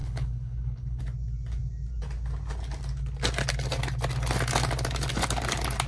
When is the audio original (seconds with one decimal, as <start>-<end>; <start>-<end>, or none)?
1.0-5.9